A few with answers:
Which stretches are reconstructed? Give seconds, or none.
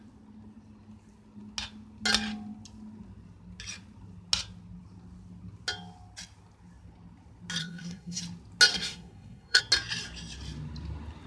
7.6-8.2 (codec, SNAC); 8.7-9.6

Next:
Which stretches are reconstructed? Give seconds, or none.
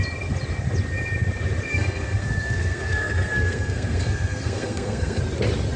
1.7-5.2 (codec, SNAC)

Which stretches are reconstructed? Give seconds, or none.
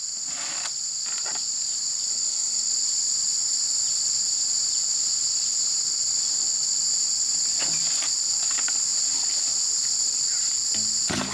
2.1-2.7 (codec, SNAC)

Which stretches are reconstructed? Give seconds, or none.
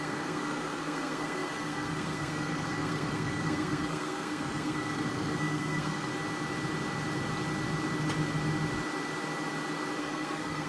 0.0-6.1 (codec, SNAC); 10.0-10.7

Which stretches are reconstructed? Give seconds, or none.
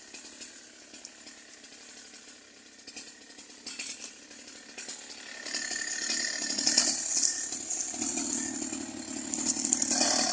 none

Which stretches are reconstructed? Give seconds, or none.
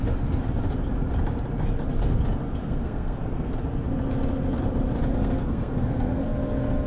2.6-3.5 (codec, SNAC); 5.1-6.2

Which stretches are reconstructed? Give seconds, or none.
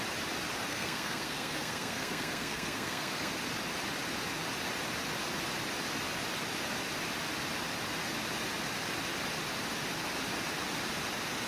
0.7-3.3 (codec, SNAC)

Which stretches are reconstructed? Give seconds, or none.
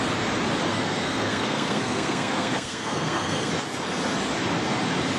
0.7-3.5 (codec, SNAC)